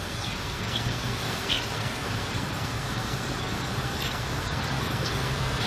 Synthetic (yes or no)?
yes